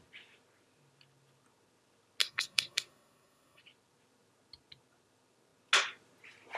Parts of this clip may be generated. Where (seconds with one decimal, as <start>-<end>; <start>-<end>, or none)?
2.2-3.6